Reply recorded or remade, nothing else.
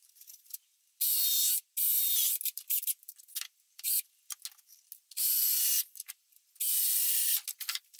recorded